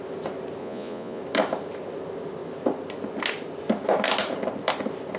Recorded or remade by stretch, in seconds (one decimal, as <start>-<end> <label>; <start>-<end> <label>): 0.0-0.6 recorded; 0.6-1.2 remade; 1.2-5.2 recorded